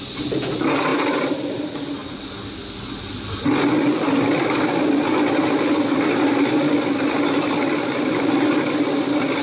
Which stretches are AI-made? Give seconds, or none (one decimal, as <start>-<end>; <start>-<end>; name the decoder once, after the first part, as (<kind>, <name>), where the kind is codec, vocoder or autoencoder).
none